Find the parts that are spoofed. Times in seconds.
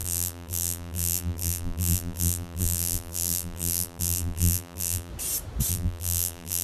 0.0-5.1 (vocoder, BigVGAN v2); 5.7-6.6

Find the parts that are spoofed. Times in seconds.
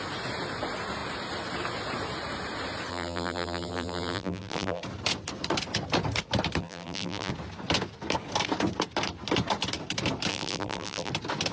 2.9-4.8 (vocoder, BigVGAN v2); 6.6-7.3; 10.3-11.1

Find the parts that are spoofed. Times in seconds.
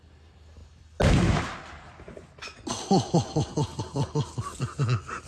none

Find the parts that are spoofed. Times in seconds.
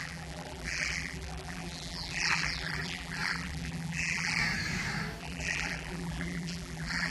0.0-4.4 (vocoder, BigVGAN v2); 5.2-7.1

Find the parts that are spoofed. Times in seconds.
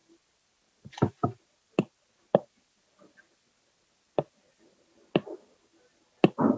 0.0-1.1 (vocoder, BigVGAN v2)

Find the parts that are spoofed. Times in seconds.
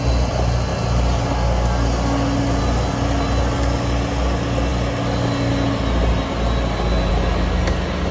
none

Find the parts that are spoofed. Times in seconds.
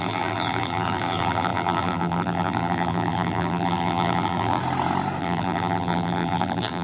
0.0-4.6 (vocoder, BigVGAN v2); 5.2-6.8